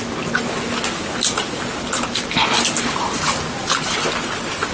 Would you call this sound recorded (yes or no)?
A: yes